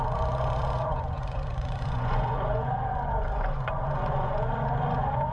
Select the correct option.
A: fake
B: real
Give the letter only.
A